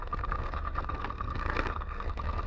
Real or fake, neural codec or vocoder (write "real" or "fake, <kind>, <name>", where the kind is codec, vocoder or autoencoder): fake, codec, SNAC